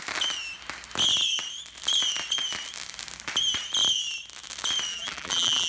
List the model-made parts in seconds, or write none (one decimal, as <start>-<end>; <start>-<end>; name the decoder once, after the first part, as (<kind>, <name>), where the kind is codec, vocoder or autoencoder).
4.9-5.7 (vocoder, BigVGAN v2)